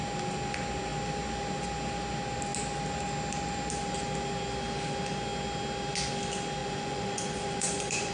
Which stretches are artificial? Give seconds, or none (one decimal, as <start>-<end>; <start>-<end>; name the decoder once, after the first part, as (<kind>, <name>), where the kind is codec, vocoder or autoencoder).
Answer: 6.6-8.1 (vocoder, Vocos)